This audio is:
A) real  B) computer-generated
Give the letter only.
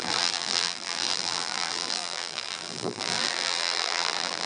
B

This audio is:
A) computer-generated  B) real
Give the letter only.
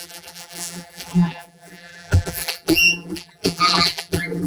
A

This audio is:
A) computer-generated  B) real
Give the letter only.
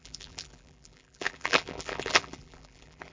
A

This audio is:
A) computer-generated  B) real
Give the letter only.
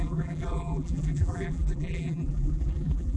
A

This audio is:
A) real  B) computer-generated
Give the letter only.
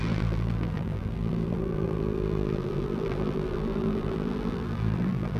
B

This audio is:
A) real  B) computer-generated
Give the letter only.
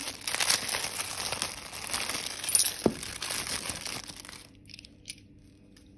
A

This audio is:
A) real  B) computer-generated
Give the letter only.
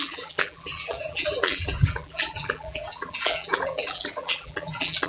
B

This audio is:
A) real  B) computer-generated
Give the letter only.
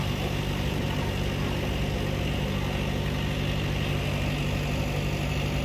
A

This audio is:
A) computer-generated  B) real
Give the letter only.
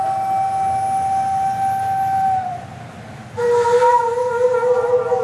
B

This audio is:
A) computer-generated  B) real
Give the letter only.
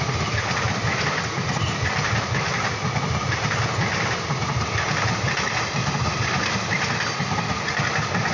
B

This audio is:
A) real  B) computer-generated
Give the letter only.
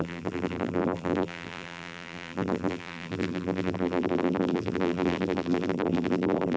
B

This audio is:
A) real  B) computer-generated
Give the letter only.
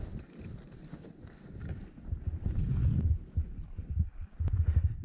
B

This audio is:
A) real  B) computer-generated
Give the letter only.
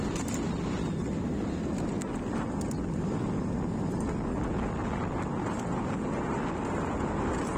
A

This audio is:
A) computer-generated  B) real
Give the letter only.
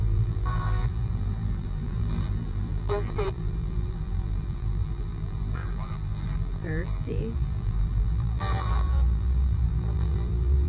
A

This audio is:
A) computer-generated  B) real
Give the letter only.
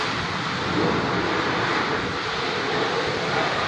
B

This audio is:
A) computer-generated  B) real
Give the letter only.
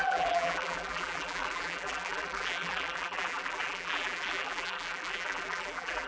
A